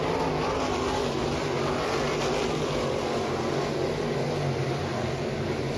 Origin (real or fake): real